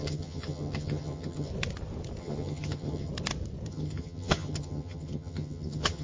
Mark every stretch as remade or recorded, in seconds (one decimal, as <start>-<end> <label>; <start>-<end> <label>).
0.0-1.5 remade; 1.5-2.2 recorded; 2.2-3.1 remade; 3.1-3.7 recorded; 3.7-6.0 remade